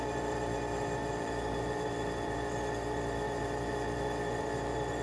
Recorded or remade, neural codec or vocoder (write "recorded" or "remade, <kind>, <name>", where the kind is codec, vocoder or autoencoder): remade, vocoder, BigVGAN v2